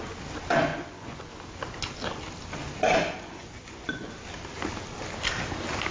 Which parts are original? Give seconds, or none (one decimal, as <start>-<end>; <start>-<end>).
0.0-0.7; 1.3-3.0; 4.1-5.9